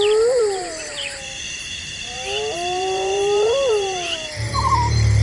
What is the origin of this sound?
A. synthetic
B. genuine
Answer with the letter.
A